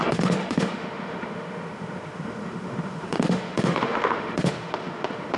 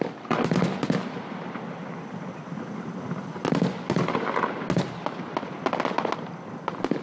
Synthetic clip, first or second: first